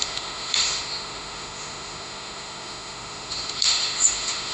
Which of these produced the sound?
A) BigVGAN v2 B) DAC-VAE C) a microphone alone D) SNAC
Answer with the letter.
B